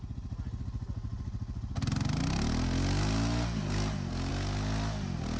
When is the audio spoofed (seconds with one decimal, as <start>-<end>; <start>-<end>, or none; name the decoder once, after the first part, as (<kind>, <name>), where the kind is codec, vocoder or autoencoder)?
none